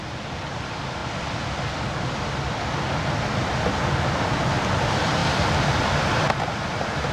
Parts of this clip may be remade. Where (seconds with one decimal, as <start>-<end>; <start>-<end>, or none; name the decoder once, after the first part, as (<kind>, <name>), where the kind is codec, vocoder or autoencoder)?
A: 5.2-6.4 (vocoder, BigVGAN v2)